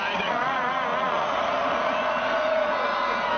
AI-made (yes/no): yes